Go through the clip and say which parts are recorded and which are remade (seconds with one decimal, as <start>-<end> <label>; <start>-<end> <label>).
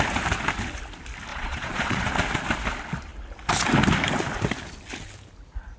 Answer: 0.0-1.3 recorded; 1.3-2.1 remade; 2.1-5.8 recorded